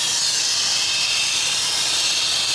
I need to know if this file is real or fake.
real